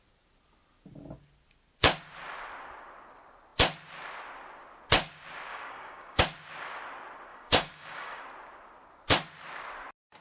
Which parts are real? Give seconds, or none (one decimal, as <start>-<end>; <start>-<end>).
0.0-5.5; 6.2-7.3; 8.2-10.2